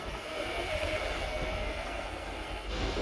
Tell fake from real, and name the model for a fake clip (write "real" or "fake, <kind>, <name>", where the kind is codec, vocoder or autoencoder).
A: fake, codec, SNAC